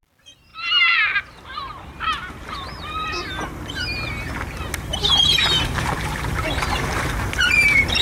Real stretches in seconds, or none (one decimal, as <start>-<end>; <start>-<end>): 0.0-4.9; 6.9-8.0